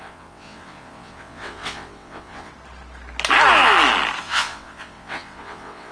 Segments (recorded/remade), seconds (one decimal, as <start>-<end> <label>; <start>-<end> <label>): 0.0-2.5 remade; 2.5-4.2 recorded; 4.2-5.9 remade